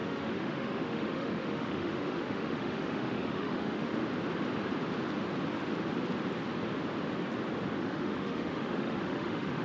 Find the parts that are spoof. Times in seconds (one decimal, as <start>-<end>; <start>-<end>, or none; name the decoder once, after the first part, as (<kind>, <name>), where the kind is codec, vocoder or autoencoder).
0.0-4.0 (autoencoder, DAC-VAE); 7.8-9.6